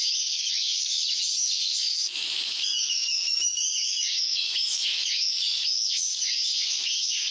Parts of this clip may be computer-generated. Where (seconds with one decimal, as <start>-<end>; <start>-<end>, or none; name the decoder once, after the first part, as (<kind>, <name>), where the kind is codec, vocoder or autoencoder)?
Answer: 0.0-7.3 (autoencoder, DAC-VAE)